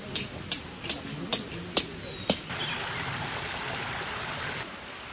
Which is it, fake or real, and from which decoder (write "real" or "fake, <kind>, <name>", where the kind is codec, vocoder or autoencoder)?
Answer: real